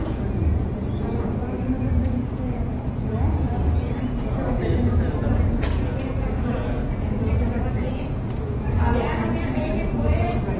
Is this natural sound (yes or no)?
no